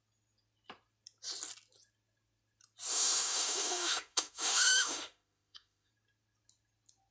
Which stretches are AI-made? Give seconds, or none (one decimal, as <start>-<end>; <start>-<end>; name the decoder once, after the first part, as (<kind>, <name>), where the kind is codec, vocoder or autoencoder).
2.9-5.9 (autoencoder, DAC-VAE)